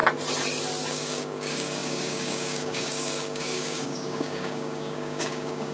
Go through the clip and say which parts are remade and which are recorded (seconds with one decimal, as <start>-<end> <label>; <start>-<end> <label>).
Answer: 0.0-0.9 recorded; 0.9-5.7 remade